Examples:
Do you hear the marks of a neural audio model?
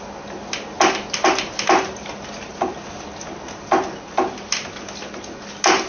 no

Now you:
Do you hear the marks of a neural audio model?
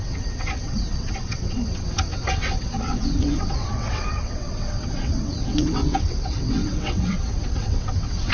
yes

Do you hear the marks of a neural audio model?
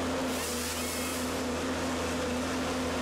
no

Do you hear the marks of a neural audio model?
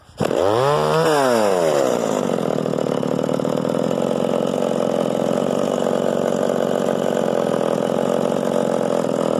no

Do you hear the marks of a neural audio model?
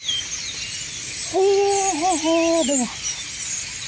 no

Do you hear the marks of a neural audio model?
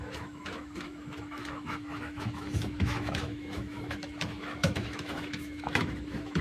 yes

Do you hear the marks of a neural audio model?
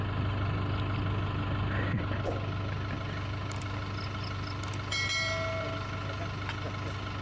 no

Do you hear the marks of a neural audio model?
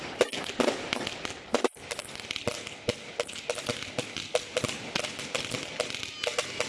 no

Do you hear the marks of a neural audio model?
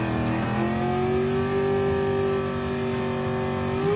no